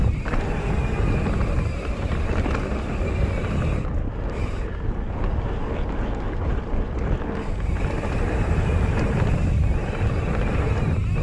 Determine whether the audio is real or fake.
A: real